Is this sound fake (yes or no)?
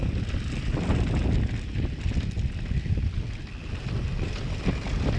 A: no